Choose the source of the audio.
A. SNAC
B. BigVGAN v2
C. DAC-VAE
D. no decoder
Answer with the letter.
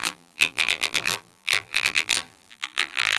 B